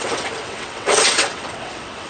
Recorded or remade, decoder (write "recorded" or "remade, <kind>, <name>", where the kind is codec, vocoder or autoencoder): remade, vocoder, WaveNeXt